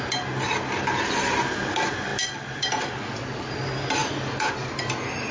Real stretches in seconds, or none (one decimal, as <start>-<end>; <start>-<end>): 0.0-2.1; 2.9-4.0; 4.7-5.3